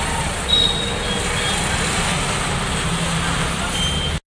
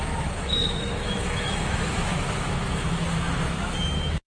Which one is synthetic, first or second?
second